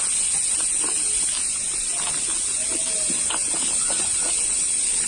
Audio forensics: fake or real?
real